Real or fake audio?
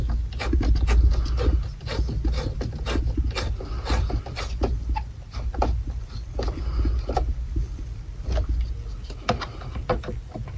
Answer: real